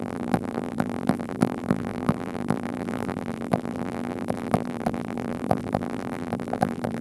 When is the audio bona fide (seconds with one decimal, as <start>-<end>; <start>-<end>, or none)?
none